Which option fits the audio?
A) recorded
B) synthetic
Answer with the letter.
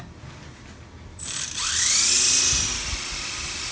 A